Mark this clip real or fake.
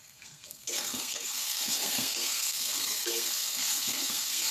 fake